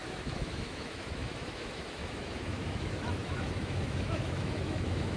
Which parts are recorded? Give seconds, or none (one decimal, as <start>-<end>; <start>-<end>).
none